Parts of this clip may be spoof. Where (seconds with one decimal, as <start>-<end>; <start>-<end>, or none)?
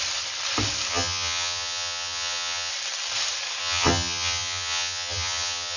0.9-2.7; 3.6-5.8